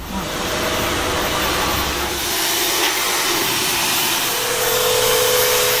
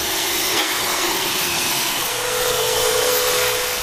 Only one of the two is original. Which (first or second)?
first